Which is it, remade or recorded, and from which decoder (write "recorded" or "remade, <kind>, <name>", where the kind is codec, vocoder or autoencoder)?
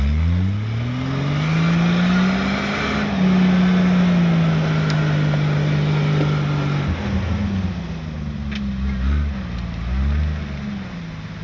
recorded